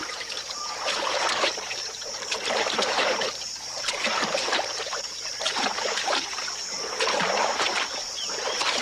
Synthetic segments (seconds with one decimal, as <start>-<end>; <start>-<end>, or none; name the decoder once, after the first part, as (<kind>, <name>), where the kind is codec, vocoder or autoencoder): 0.7-8.8 (vocoder, BigVGAN v2)